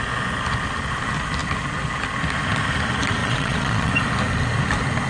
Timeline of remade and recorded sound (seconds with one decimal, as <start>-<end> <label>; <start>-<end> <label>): 0.0-3.2 recorded; 3.2-3.9 remade; 3.9-5.1 recorded